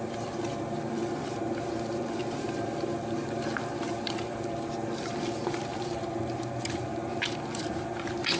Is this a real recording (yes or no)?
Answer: no